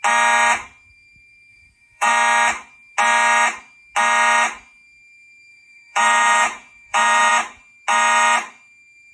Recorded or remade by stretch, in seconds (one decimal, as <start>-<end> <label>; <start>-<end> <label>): 0.0-1.5 recorded; 1.5-2.1 remade; 2.1-5.5 recorded; 5.5-7.3 remade; 7.3-9.1 recorded